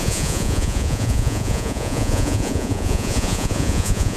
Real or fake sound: fake